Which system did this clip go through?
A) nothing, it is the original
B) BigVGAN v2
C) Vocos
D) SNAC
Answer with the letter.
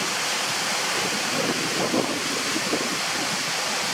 A